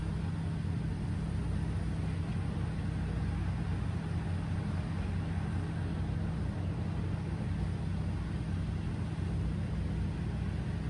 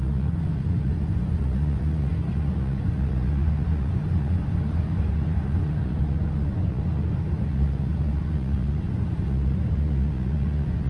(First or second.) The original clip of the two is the first